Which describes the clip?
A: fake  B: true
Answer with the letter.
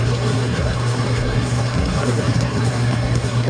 A